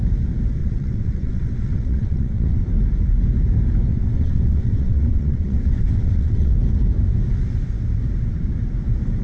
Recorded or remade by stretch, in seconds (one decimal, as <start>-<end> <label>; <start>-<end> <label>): 0.0-0.6 recorded; 0.6-2.6 remade; 2.6-3.9 recorded; 3.9-6.5 remade; 6.5-9.2 recorded